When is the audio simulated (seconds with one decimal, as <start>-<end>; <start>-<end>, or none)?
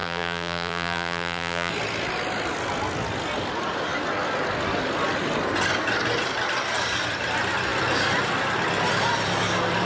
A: 0.0-1.7